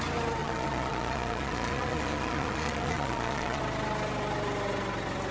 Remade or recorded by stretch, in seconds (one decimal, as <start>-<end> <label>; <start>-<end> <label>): 0.0-0.4 recorded; 0.4-3.6 remade; 3.6-5.3 recorded